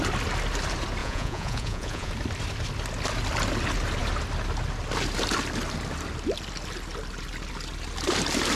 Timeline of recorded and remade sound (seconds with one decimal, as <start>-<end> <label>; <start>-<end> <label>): 0.0-1.0 recorded; 1.0-2.1 remade; 2.1-8.6 recorded